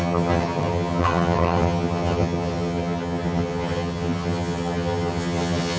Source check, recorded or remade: remade